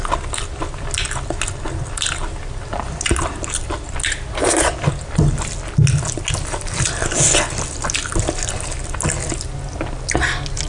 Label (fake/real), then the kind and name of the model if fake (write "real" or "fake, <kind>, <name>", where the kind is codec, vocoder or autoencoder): real